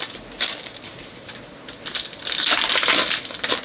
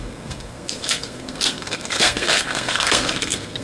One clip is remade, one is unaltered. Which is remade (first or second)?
second